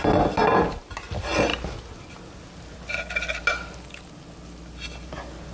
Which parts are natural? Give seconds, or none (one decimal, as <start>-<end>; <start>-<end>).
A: 0.0-5.5

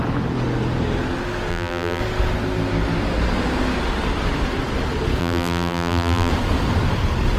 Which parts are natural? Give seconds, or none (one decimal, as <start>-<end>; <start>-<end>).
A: 0.0-1.5; 2.0-5.2; 6.3-7.4